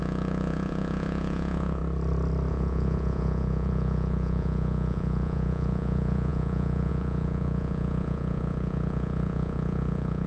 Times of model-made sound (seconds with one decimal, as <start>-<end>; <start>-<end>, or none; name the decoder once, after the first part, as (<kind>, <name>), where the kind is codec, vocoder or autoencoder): 0.0-1.8 (vocoder, Vocos); 2.5-10.3